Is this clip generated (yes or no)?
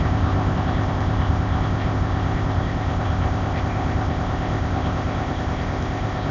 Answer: yes